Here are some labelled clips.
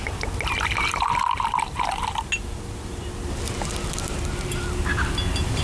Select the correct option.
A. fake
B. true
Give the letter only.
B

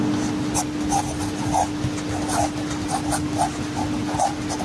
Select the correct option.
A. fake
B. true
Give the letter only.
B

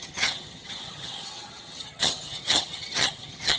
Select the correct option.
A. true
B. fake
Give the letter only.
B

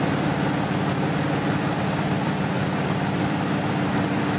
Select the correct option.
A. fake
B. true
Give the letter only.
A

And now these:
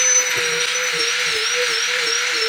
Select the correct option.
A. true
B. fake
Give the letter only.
A